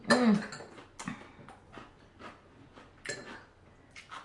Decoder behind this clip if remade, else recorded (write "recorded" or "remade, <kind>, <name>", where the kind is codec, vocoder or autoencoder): recorded